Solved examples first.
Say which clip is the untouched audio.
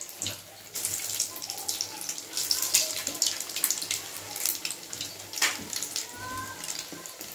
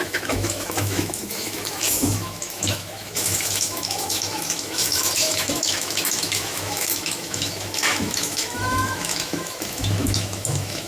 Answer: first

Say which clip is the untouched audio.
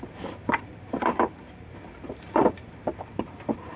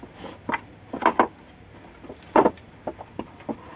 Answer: second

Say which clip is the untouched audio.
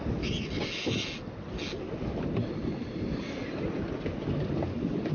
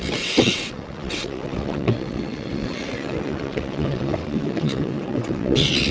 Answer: first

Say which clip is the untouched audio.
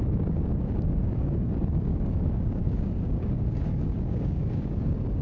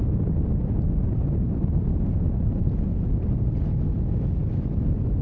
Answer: second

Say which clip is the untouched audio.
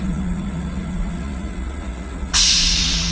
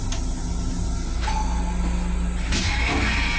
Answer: second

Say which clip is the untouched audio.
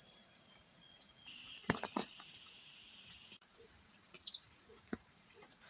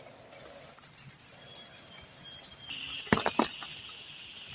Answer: second